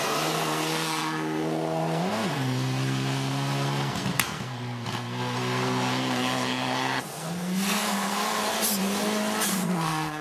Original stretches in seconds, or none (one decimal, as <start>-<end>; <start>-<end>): 8.3-9.5